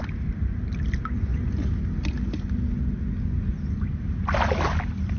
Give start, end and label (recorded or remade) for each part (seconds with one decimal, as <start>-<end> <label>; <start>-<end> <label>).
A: 0.0-5.2 recorded

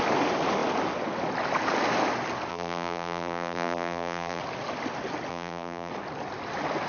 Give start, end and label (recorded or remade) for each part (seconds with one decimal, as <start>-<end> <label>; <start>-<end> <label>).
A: 0.0-2.5 recorded; 2.5-4.4 remade; 4.4-5.3 recorded; 5.3-5.9 remade; 5.9-6.9 recorded